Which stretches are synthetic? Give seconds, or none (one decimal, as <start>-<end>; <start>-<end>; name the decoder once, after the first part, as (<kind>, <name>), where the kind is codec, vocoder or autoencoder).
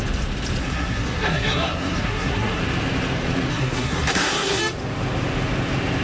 0.6-2.6 (codec, SNAC); 3.5-4.6